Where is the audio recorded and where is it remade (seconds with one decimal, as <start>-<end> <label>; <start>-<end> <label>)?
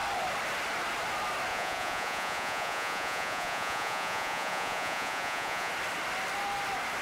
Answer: 0.0-1.5 recorded; 1.5-5.7 remade; 5.7-7.0 recorded